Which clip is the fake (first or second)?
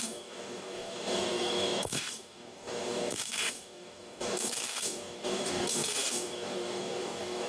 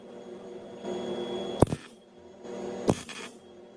first